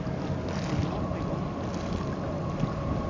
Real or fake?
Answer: real